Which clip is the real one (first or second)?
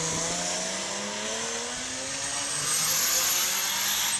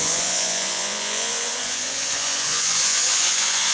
first